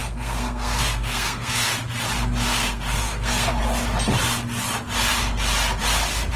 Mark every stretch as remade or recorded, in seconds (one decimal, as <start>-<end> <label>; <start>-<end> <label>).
0.0-1.7 remade; 1.7-2.5 recorded; 2.5-3.6 remade; 3.6-6.4 recorded